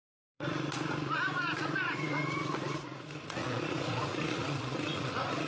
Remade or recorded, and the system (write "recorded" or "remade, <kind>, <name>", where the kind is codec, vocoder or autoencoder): remade, vocoder, Vocos